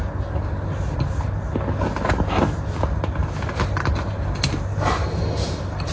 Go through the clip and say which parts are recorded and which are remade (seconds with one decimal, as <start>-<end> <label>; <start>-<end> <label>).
0.0-4.7 recorded; 4.7-5.9 remade